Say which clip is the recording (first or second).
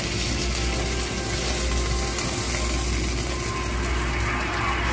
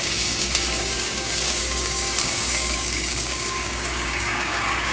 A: first